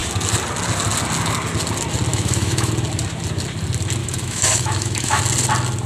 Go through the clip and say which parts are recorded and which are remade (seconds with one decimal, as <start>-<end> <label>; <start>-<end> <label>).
0.0-2.1 recorded; 2.1-2.7 remade; 2.7-4.0 recorded; 4.0-5.2 remade; 5.2-5.9 recorded

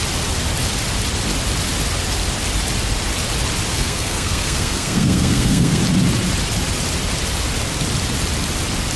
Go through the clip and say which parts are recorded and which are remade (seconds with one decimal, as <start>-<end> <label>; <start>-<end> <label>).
0.0-3.7 recorded; 3.7-5.8 remade; 5.8-9.0 recorded

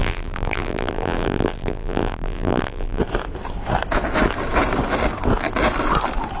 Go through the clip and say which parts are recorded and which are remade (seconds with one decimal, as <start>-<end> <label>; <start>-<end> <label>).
0.0-3.0 remade; 3.0-6.4 recorded

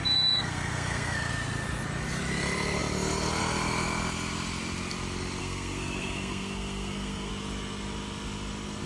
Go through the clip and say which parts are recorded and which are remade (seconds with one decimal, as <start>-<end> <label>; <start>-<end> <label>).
0.0-1.3 remade; 1.3-5.4 recorded; 5.4-7.3 remade; 7.3-8.9 recorded